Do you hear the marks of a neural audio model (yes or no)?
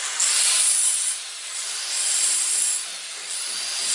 no